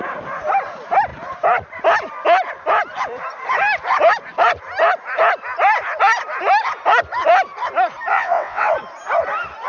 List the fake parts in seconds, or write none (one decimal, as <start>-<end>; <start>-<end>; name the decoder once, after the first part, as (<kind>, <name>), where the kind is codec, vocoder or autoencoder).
8.1-8.7 (vocoder, WaveNeXt)